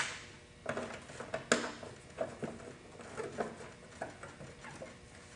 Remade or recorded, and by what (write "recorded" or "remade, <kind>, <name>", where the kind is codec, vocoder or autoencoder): recorded